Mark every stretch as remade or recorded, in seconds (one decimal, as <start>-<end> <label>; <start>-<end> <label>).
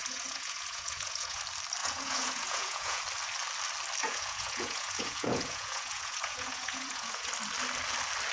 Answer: 0.0-1.4 remade; 1.4-1.8 recorded; 1.8-3.0 remade; 3.0-4.0 recorded; 4.0-7.3 remade; 7.3-8.3 recorded